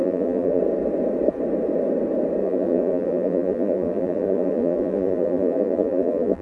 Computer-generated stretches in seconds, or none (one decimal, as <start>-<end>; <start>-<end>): 0.0-0.6; 2.4-6.4

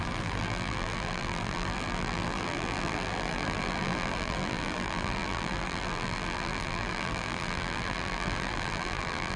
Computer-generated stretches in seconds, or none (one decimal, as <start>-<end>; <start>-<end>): 0.0-9.4

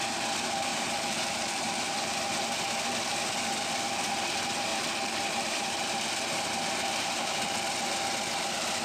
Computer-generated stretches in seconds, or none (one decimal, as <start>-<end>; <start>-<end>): 0.7-1.8; 4.7-5.8

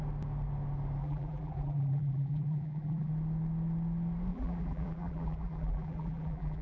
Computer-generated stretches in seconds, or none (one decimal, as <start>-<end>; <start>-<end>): 1.0-3.1; 4.3-6.6

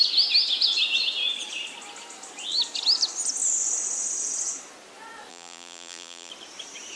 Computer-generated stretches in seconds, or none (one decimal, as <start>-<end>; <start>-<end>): 5.3-6.3